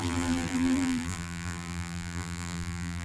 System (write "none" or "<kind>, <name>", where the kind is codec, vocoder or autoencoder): vocoder, BigVGAN v2